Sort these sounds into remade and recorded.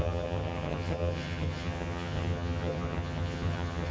remade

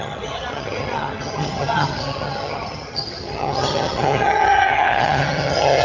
remade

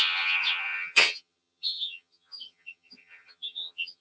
remade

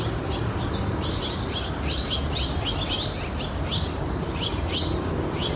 recorded